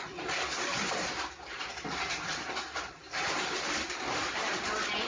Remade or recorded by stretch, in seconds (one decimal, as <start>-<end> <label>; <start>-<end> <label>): 0.0-5.1 remade

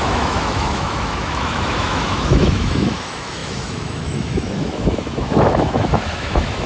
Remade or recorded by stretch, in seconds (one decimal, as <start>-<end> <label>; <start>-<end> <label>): 0.0-6.7 remade